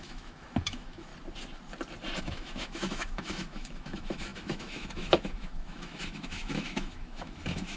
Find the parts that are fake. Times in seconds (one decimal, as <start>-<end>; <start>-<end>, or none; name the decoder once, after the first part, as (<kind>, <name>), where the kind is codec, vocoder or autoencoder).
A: 0.0-1.1 (autoencoder, DAC-VAE); 2.2-7.8

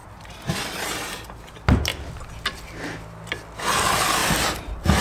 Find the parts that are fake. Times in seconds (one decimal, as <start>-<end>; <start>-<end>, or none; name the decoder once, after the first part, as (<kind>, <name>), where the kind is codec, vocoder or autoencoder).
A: none

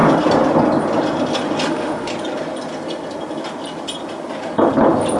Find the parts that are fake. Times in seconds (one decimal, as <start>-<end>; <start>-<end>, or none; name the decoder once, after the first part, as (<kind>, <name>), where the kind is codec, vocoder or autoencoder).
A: 1.7-2.1 (autoencoder, DAC-VAE)

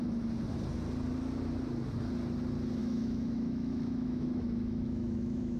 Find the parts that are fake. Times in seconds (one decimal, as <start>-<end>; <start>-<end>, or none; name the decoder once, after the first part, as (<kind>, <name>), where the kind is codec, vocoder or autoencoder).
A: 2.8-5.6 (autoencoder, DAC-VAE)

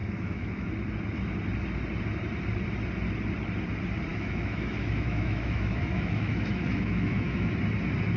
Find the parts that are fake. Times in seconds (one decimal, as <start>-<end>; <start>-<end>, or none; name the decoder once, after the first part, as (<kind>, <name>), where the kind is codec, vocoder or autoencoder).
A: 0.0-0.7 (autoencoder, DAC-VAE); 4.1-7.5